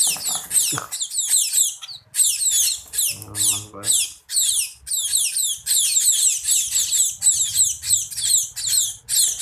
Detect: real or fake real